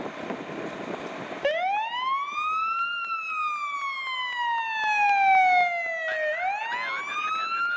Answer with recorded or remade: recorded